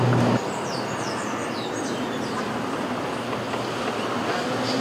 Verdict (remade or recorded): recorded